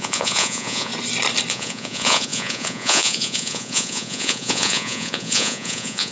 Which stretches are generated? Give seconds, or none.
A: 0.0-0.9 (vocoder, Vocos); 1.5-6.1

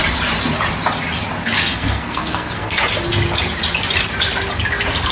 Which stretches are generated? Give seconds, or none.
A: 1.6-2.8 (codec, SNAC)

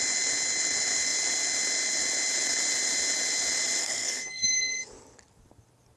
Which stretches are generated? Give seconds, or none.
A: 3.8-4.9 (codec, SNAC)

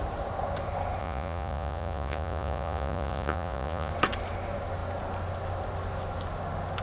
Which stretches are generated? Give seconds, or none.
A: 1.0-3.9 (vocoder, Vocos)

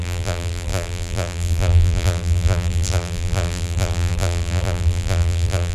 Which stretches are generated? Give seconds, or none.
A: 0.0-5.7 (vocoder, BigVGAN v2)

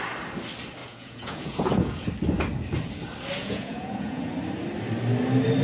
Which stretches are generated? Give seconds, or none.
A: 0.8-2.1 (vocoder, Vocos); 3.4-4.2